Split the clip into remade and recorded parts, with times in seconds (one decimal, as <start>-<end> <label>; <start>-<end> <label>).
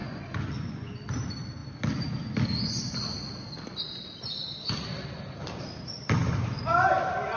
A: 0.0-0.9 remade; 0.9-7.4 recorded